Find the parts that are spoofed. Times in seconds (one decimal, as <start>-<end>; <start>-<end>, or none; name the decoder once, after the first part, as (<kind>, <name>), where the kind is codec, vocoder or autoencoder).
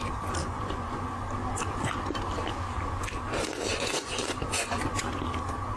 0.4-1.2 (vocoder, Vocos); 3.7-5.0